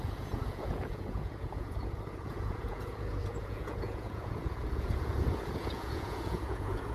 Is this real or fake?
fake